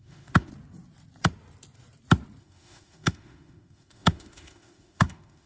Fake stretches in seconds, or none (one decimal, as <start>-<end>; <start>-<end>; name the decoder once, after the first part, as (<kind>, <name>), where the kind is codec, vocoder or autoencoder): 0.0-0.5 (autoencoder, DAC-VAE); 2.4-5.5